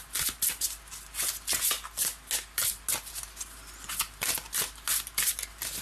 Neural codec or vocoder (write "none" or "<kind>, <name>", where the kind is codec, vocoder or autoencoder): none